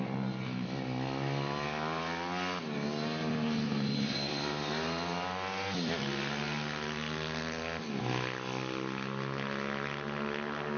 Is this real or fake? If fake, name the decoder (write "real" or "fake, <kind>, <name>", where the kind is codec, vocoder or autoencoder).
real